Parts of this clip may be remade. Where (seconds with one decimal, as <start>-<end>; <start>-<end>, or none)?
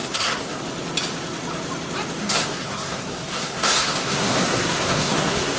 0.0-0.6; 2.2-5.6